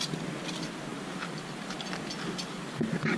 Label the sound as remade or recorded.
recorded